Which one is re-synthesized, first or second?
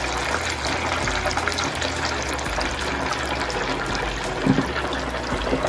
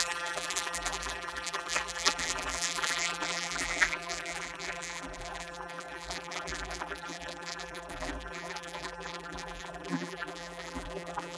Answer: second